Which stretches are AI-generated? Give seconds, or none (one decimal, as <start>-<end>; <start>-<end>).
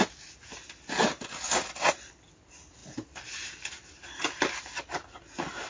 none